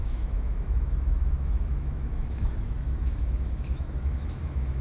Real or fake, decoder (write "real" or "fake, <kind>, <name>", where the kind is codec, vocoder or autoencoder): fake, autoencoder, DAC-VAE